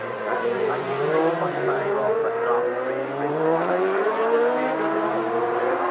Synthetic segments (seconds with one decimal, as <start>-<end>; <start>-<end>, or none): 0.0-2.2; 3.3-4.2; 5.4-5.9